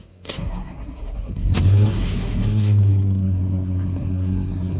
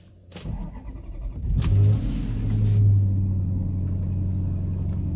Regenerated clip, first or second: first